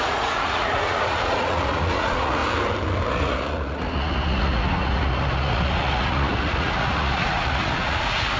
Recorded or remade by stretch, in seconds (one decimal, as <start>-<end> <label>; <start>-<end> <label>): 0.0-2.4 remade; 2.4-3.1 recorded; 3.1-8.4 remade